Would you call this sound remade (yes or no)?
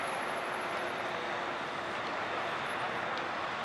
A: no